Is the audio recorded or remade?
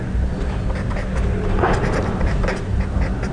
recorded